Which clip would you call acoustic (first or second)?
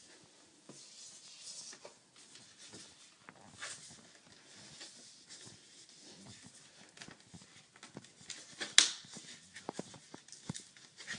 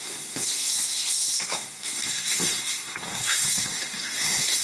first